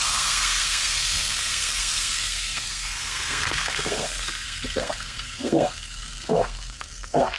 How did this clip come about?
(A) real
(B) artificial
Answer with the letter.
B